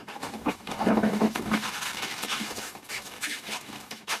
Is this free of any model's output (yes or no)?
no